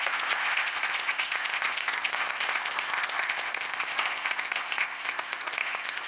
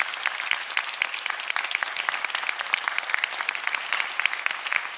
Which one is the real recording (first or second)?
second